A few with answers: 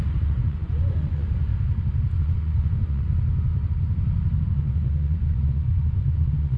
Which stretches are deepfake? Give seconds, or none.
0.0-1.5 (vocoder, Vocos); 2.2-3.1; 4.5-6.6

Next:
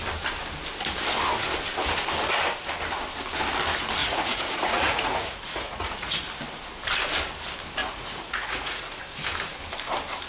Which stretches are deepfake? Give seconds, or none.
4.0-6.2 (vocoder, Vocos); 7.8-9.0

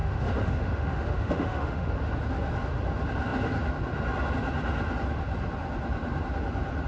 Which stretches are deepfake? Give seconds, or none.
0.0-1.9 (autoencoder, DAC-VAE)

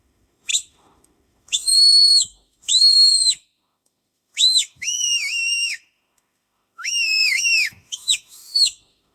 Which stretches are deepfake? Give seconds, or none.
0.0-9.1 (autoencoder, DAC-VAE)